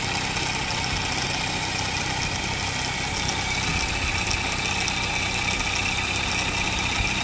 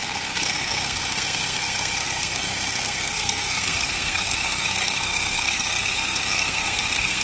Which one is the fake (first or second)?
second